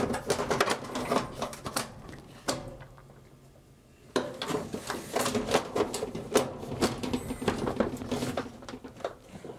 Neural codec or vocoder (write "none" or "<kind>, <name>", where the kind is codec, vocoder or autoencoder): none